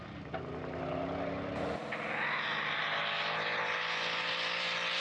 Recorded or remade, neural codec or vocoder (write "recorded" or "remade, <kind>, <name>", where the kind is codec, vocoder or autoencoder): recorded